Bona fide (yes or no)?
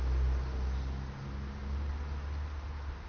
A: yes